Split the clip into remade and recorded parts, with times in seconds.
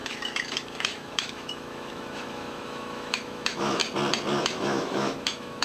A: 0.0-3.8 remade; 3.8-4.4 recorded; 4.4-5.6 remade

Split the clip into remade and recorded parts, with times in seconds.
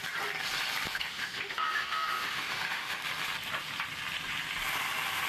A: 0.0-0.9 recorded; 0.9-3.0 remade; 3.0-5.3 recorded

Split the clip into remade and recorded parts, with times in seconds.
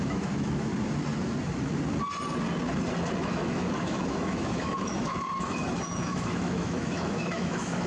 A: 0.0-0.7 remade; 0.7-3.2 recorded; 3.2-7.9 remade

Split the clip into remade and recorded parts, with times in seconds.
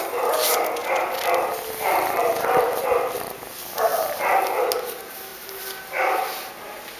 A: 0.0-7.0 recorded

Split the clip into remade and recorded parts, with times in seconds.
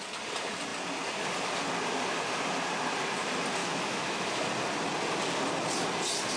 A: 0.0-3.6 recorded; 3.6-4.4 remade; 4.4-6.4 recorded